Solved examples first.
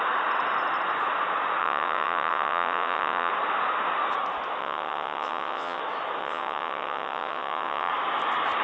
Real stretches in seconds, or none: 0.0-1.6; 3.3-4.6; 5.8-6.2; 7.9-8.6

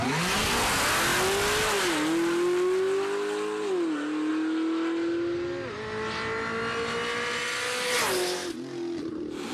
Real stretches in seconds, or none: 0.0-9.5

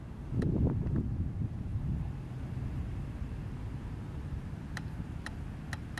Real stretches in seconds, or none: 0.0-1.7; 5.3-6.0

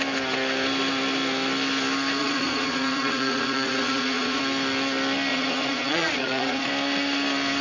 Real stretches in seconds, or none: 0.0-2.2; 4.4-5.3; 6.7-7.6

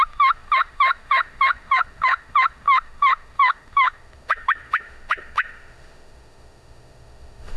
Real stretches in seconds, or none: none

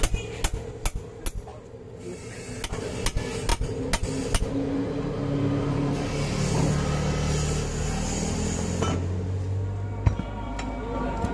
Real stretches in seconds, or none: 0.0-11.3